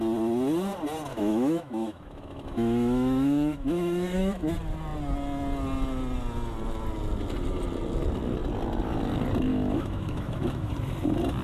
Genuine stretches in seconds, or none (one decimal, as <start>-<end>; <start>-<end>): 0.0-1.1; 4.5-9.5; 10.7-11.4